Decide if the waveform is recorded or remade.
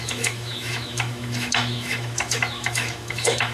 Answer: remade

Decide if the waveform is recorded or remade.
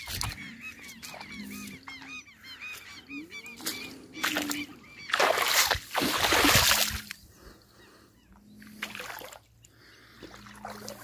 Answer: recorded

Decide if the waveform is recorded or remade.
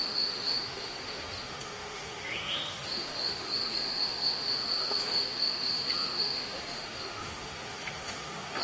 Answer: remade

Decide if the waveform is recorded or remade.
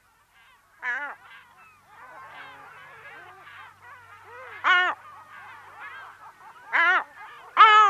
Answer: recorded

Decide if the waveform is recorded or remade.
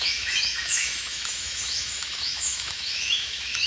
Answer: remade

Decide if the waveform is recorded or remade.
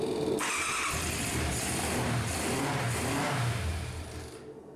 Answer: recorded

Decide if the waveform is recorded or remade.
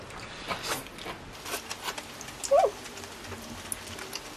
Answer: recorded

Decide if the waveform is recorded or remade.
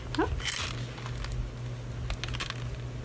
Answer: recorded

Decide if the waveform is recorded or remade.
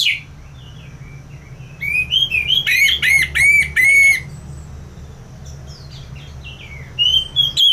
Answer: recorded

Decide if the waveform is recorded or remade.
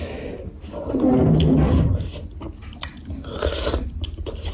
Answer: recorded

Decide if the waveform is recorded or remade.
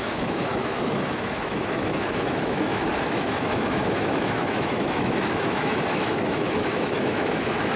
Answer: remade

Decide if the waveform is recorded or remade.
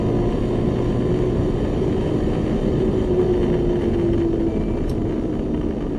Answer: recorded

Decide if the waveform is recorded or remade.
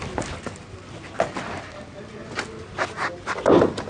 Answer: recorded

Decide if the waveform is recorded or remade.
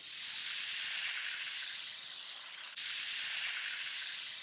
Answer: recorded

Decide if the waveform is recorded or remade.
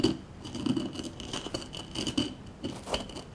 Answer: recorded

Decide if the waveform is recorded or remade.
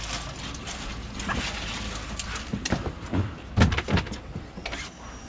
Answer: recorded